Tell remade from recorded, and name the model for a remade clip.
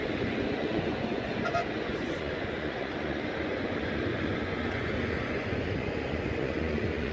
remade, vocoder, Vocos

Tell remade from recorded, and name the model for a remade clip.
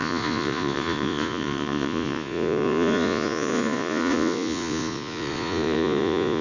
remade, vocoder, Vocos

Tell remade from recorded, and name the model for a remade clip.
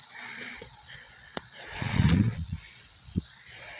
remade, vocoder, Vocos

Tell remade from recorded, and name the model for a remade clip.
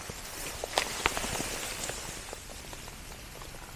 recorded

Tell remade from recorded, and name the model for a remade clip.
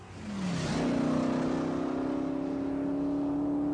recorded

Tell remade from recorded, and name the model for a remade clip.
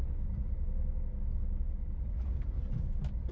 recorded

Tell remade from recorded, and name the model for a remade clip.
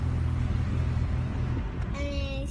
recorded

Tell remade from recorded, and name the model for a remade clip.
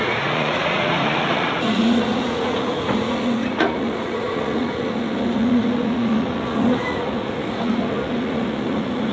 remade, vocoder, Vocos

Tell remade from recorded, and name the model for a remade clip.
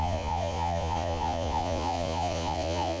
remade, vocoder, Vocos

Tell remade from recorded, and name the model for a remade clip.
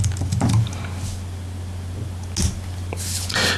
recorded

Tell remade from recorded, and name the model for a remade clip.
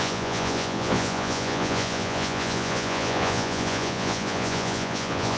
remade, vocoder, Vocos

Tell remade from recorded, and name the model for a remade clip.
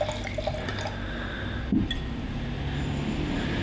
recorded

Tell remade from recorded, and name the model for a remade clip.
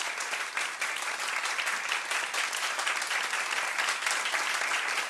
recorded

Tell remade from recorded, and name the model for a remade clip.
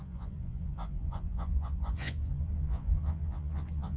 remade, vocoder, Vocos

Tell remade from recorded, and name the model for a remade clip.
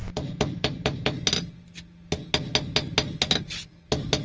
recorded